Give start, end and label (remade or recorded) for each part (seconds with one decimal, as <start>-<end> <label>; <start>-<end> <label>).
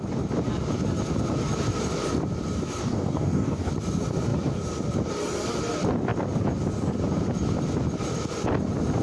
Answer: 0.0-2.8 recorded; 2.8-3.7 remade; 3.7-9.0 recorded